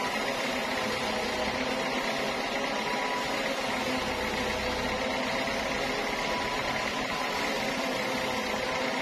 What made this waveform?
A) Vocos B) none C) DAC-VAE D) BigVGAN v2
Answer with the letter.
B